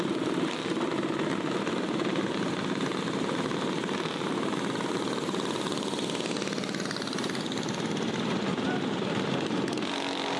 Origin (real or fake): real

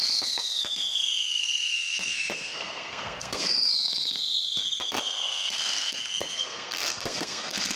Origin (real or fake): fake